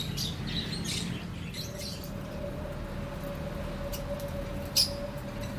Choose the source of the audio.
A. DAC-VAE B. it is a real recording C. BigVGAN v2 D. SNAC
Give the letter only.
B